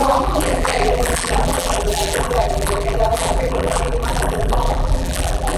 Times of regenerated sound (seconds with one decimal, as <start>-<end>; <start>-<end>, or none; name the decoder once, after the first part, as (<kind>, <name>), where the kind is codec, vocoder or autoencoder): 0.0-5.6 (vocoder, BigVGAN v2)